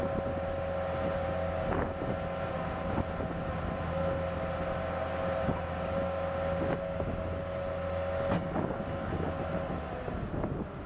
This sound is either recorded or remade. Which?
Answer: recorded